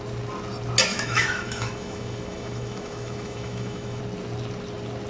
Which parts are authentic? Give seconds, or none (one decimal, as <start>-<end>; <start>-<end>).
0.0-0.9; 4.0-5.1